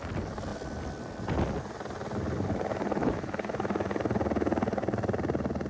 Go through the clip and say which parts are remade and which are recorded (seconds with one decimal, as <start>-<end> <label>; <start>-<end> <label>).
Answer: 0.0-3.0 recorded; 3.0-4.0 remade; 4.0-5.7 recorded